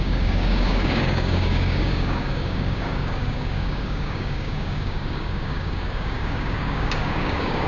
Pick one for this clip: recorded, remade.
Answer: remade